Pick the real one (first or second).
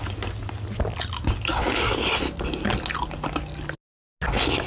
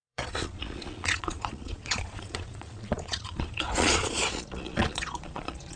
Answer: first